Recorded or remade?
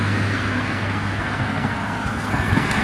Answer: remade